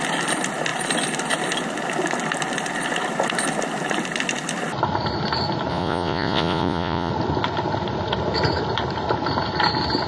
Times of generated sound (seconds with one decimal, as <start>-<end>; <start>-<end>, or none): 5.7-7.1